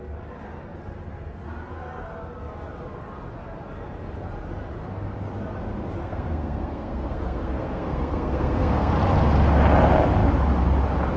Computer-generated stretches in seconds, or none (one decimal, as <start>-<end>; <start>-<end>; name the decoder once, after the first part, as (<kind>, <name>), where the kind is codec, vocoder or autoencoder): 6.0-8.9 (codec, SNAC)